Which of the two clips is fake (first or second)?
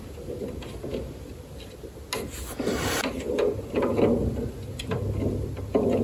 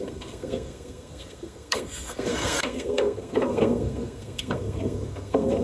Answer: second